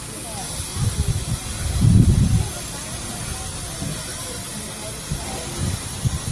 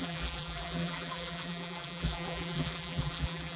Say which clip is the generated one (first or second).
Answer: second